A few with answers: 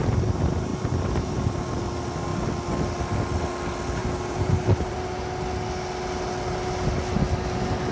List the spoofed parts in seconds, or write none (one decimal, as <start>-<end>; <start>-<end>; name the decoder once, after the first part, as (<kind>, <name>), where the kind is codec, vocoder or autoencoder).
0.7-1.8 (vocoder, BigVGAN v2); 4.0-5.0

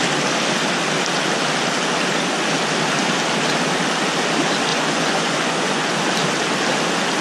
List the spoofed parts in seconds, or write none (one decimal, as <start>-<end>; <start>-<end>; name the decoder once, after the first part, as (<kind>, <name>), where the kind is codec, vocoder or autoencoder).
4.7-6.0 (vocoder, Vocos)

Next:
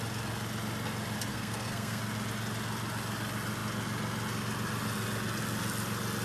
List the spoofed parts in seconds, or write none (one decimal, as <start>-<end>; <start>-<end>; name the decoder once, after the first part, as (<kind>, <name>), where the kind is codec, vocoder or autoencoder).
1.3-2.0 (codec, SNAC)